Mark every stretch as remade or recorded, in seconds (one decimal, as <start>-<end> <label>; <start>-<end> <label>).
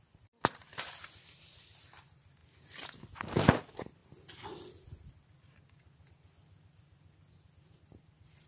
0.0-8.5 recorded